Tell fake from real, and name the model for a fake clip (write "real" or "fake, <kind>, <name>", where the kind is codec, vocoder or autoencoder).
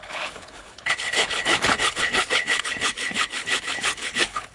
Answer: fake, codec, HILCodec